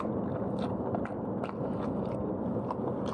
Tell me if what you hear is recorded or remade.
recorded